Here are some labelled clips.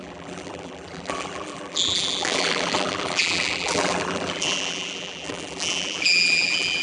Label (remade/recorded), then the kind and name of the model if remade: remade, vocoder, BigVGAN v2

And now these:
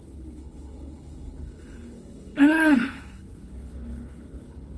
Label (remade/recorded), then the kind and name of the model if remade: remade, codec, HILCodec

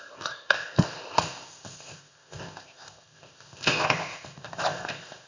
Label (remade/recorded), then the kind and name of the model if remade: remade, codec, ZipCodec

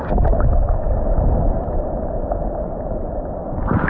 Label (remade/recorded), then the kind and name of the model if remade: recorded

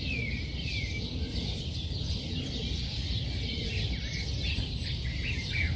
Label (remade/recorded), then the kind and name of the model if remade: recorded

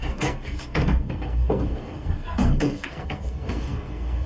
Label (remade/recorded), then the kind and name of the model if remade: remade, codec, SNAC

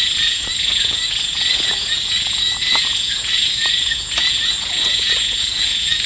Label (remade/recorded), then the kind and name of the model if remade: remade, vocoder, Vocos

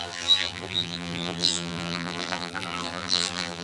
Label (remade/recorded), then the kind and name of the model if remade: remade, vocoder, BigVGAN v2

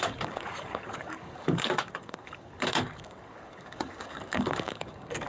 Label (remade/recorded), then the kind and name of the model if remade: remade, codec, DAC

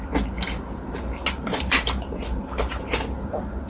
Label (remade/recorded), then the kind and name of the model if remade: remade, vocoder, BigVGAN v2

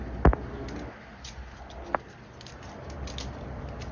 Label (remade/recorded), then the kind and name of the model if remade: recorded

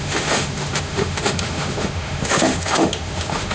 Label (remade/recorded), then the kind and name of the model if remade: remade, autoencoder, DAC-VAE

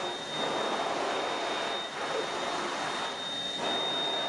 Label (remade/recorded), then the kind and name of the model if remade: recorded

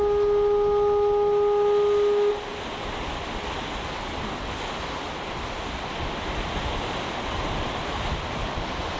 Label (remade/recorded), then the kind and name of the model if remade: recorded